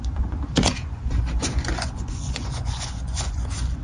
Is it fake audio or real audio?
fake